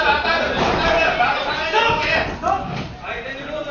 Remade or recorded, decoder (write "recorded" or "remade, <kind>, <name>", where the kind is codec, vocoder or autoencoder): recorded